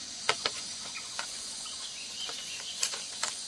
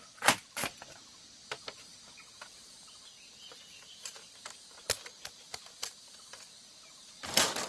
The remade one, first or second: first